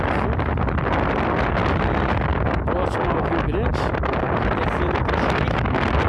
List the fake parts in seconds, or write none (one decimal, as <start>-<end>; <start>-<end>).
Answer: none